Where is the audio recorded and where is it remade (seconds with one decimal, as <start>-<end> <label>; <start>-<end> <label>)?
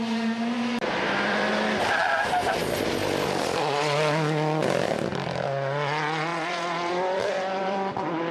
0.0-6.3 recorded; 6.3-7.9 remade; 7.9-8.3 recorded